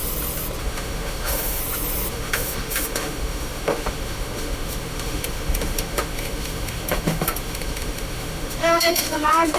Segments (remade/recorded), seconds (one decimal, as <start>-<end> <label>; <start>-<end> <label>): 0.0-0.6 recorded; 0.6-1.6 remade; 1.6-2.1 recorded; 2.1-9.6 remade